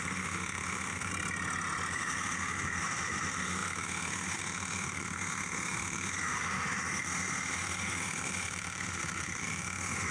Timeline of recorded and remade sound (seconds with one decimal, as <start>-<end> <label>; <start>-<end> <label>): 0.0-1.1 remade; 1.1-1.9 recorded; 1.9-10.1 remade